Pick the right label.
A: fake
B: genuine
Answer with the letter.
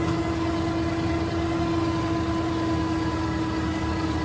B